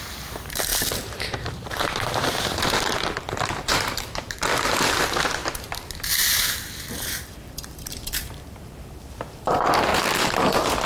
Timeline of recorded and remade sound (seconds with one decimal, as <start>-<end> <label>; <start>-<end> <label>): 0.0-9.9 remade; 9.9-10.9 recorded